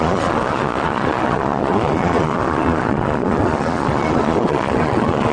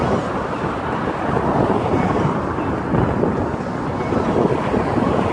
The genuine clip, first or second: second